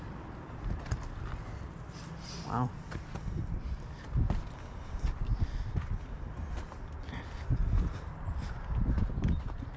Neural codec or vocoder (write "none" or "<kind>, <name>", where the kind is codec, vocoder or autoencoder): none